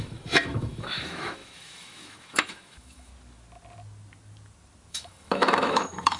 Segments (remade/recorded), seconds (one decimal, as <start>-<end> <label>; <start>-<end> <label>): 0.0-3.1 remade; 3.1-4.9 recorded; 4.9-6.2 remade